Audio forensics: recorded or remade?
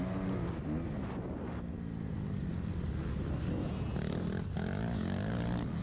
recorded